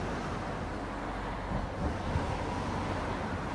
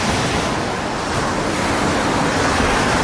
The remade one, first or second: second